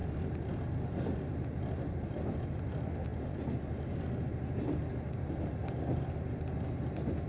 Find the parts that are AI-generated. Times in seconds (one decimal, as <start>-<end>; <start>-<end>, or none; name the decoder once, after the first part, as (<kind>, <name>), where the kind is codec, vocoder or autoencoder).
none